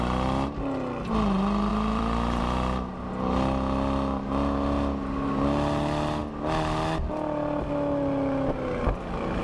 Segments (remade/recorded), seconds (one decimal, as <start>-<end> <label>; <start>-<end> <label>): 0.0-1.7 recorded; 1.7-2.4 remade; 2.4-9.4 recorded